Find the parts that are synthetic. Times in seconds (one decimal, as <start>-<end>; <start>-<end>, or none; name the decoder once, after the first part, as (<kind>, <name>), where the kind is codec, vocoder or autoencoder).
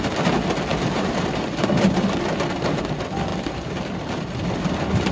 0.7-2.8 (vocoder, BigVGAN v2); 3.3-5.1